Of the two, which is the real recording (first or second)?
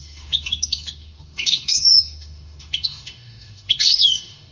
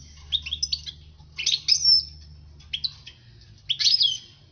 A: second